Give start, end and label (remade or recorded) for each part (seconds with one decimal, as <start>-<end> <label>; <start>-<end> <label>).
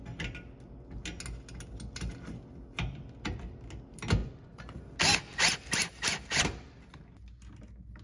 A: 0.0-4.2 recorded; 4.2-4.8 remade; 4.8-8.0 recorded